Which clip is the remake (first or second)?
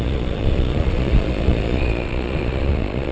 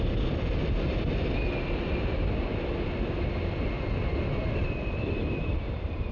first